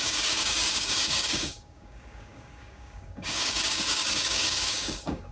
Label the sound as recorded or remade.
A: remade